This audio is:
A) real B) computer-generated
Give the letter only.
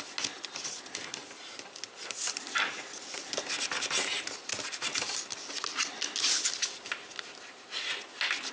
A